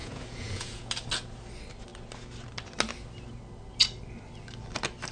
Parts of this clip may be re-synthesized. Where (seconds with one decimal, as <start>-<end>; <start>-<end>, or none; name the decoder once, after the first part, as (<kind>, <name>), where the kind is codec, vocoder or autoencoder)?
0.0-0.9 (vocoder, Vocos)

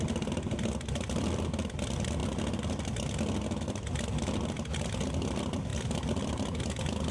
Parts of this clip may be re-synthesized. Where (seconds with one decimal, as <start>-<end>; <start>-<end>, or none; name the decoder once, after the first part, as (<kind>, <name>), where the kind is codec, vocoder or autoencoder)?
none